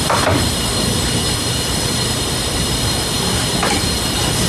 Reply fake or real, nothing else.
fake